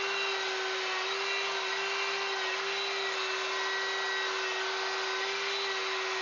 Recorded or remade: recorded